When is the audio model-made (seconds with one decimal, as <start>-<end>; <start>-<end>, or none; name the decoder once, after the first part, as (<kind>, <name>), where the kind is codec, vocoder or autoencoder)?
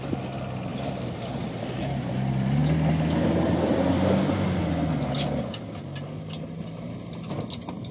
none